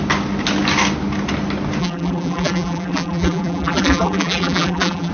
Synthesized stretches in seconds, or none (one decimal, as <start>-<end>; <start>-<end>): 1.8-5.1